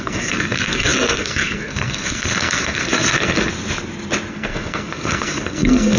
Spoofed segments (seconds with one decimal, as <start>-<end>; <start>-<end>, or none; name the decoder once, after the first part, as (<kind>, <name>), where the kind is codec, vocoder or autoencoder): 0.0-3.5 (codec, SNAC); 4.3-6.0